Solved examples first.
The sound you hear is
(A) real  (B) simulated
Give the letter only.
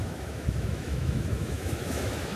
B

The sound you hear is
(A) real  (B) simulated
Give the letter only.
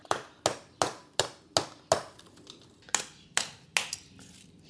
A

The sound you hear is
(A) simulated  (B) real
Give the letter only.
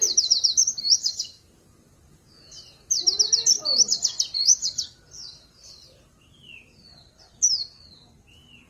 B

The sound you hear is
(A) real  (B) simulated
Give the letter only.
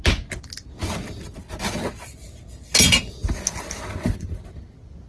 A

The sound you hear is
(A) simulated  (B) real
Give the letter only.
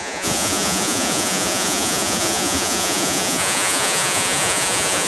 A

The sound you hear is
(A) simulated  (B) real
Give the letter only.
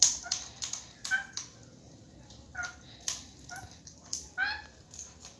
A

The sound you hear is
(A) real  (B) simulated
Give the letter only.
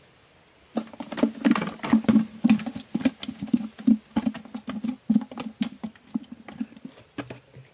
A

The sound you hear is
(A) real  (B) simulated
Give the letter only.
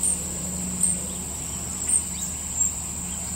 A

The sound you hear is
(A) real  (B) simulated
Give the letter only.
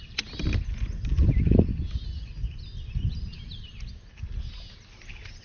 A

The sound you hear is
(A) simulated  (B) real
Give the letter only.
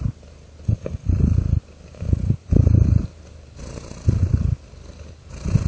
B